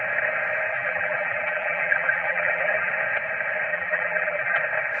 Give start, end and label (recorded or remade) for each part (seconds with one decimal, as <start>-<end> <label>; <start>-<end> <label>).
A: 0.0-0.7 recorded; 0.7-2.9 remade; 2.9-3.7 recorded; 3.7-4.6 remade; 4.6-5.0 recorded